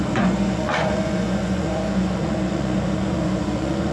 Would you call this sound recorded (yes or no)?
no